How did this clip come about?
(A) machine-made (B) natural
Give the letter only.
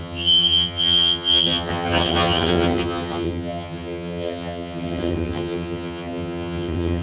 A